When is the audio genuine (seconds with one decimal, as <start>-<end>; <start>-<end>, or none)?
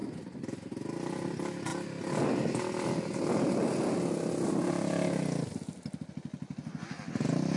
0.0-7.6